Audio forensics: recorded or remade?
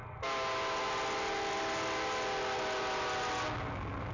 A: recorded